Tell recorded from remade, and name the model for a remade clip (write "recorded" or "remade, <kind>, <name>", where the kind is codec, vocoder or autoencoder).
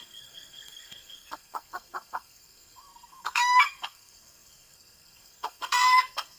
remade, codec, SNAC